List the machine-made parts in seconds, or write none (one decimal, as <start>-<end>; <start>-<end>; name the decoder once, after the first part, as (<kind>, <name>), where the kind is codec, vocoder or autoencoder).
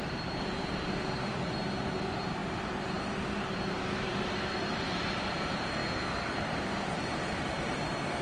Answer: 0.0-5.8 (vocoder, BigVGAN v2); 6.4-8.2